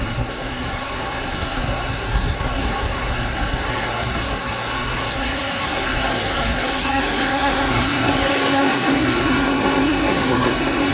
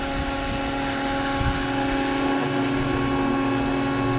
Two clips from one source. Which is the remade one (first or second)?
first